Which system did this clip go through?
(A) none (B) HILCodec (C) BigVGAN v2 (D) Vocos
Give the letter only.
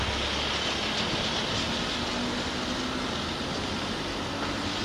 A